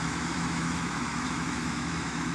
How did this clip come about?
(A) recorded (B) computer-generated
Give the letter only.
B